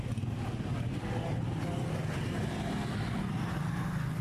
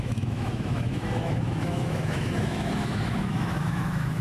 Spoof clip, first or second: second